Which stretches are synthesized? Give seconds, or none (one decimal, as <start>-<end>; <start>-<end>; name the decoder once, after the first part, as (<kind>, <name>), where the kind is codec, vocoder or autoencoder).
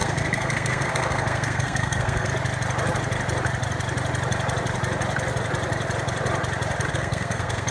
0.0-2.3 (codec, SNAC); 6.9-7.7